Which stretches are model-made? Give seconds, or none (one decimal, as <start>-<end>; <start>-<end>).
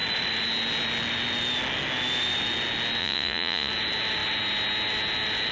3.0-3.7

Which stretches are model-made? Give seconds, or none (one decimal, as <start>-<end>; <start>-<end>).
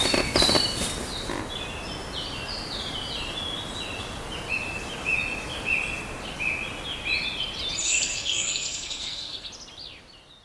7.8-9.5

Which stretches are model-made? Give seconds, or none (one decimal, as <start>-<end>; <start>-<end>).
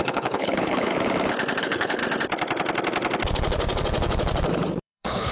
0.0-0.9; 1.6-2.0; 4.8-5.3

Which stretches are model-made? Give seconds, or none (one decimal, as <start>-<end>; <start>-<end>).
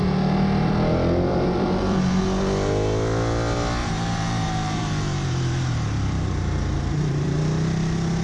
1.3-2.2; 3.8-7.4